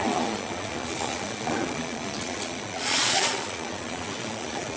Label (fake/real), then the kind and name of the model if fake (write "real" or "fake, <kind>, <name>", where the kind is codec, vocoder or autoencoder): fake, vocoder, Vocos